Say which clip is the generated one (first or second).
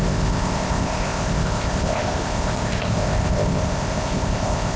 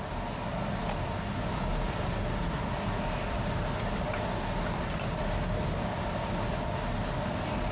first